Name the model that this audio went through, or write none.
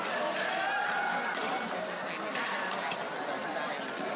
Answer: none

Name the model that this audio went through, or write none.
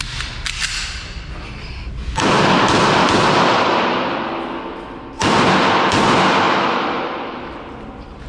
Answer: none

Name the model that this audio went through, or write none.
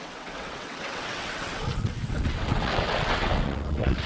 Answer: vocoder, WaveNeXt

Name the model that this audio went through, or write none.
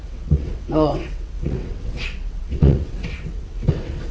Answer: vocoder, WaveNeXt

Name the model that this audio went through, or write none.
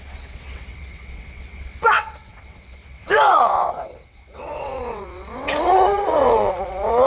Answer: vocoder, WaveNeXt